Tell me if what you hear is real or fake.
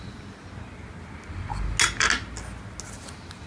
real